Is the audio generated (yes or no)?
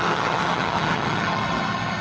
yes